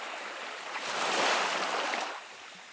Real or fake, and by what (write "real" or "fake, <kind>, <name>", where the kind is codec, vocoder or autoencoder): real